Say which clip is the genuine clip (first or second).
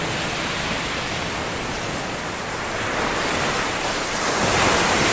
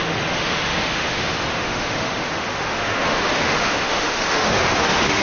first